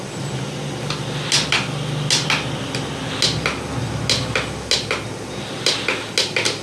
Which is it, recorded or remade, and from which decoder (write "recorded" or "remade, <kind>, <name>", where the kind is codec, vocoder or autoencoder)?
recorded